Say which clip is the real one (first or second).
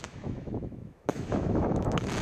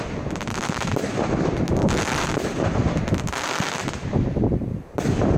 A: second